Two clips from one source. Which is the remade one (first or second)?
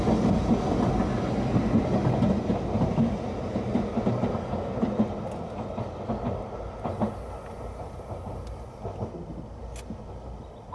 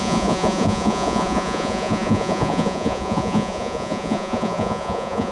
second